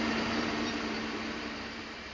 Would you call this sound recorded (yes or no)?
no